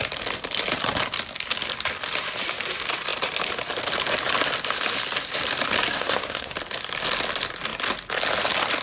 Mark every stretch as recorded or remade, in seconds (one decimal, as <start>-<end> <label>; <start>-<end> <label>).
0.0-5.9 recorded; 5.9-6.5 remade; 6.5-8.8 recorded